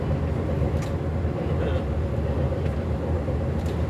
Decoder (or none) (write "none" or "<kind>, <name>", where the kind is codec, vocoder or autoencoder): none